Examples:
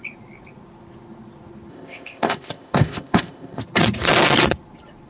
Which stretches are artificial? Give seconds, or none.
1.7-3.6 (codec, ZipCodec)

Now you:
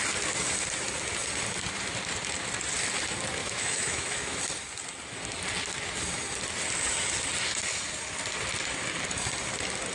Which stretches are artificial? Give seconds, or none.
3.4-4.4 (autoencoder, DAC-VAE)

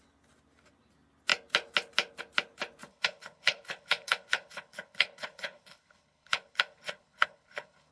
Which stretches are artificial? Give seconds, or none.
2.9-7.9 (codec, HILCodec)

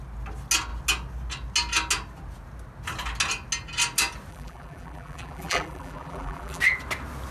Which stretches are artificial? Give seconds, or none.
4.3-6.6 (vocoder, BigVGAN v2)

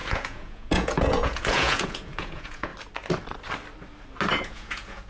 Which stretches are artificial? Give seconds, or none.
0.0-2.7 (vocoder, Vocos); 4.3-5.1